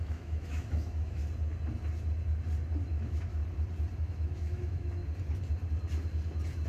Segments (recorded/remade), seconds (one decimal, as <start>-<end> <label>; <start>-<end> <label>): 0.0-1.2 remade; 1.2-2.8 recorded; 2.8-3.4 remade; 3.4-4.0 recorded; 4.0-5.0 remade; 5.0-6.7 recorded